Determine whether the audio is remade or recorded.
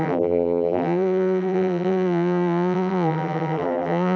remade